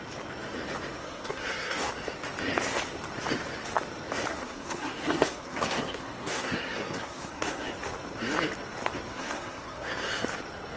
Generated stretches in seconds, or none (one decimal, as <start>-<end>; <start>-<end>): 1.0-1.9; 4.3-7.7; 9.1-10.1